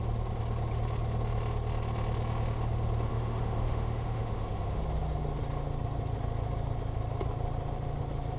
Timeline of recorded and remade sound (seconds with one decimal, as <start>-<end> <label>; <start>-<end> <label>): 0.0-3.1 recorded; 3.1-4.8 remade; 4.8-8.4 recorded